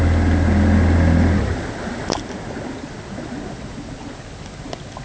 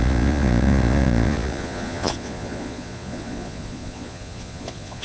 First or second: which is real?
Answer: first